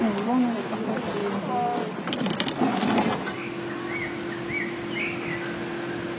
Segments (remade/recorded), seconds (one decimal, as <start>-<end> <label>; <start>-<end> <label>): 0.0-6.2 recorded